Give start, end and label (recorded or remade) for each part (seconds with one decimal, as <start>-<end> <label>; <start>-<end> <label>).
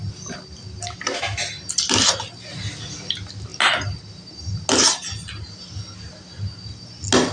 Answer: 0.0-7.3 recorded